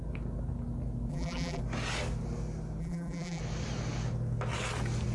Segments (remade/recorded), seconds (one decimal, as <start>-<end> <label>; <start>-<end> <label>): 0.0-1.1 recorded; 1.1-1.6 remade; 1.6-2.8 recorded; 2.8-3.4 remade; 3.4-5.1 recorded